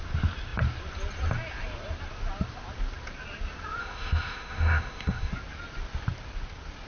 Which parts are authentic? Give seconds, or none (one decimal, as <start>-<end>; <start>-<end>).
0.0-3.8; 5.3-6.9